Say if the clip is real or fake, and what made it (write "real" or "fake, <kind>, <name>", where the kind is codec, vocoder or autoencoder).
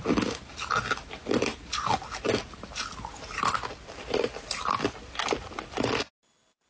real